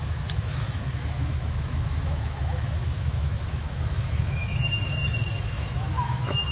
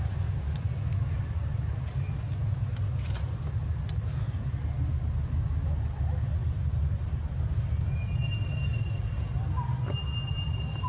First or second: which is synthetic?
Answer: first